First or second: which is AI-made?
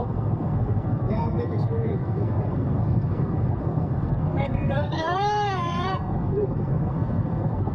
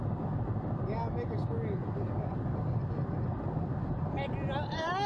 first